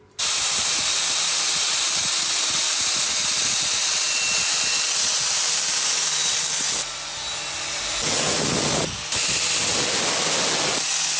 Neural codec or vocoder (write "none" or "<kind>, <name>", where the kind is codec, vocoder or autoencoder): none